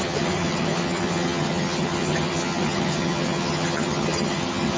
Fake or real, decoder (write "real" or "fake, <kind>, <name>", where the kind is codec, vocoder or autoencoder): fake, vocoder, HiFi-GAN